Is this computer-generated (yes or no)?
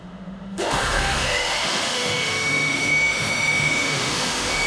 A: yes